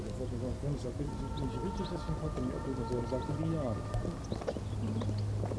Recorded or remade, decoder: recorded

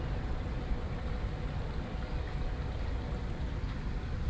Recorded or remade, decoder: recorded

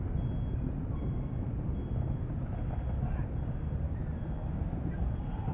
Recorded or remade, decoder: recorded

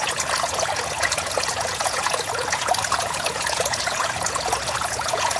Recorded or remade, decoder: remade, vocoder, Vocos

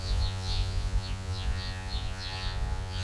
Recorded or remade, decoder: remade, vocoder, Vocos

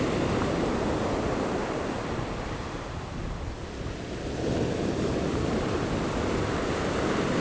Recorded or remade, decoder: recorded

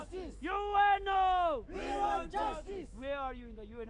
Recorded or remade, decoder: remade, autoencoder, DAC-VAE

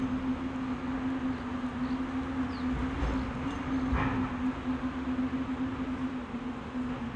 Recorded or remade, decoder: recorded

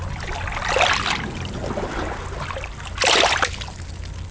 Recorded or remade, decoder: recorded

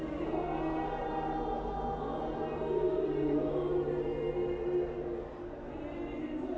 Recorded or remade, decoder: recorded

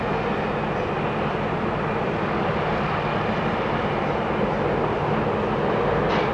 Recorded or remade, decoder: recorded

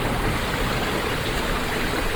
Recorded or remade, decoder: recorded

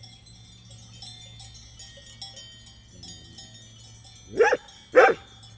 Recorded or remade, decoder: recorded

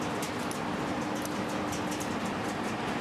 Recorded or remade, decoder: recorded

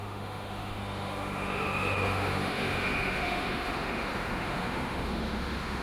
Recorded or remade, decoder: remade, autoencoder, DAC-VAE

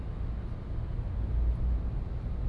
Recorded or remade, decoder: recorded